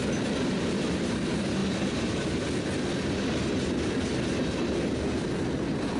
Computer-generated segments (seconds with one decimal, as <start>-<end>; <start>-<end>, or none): none